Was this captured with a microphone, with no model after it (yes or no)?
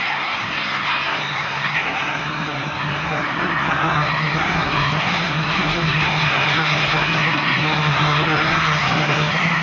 no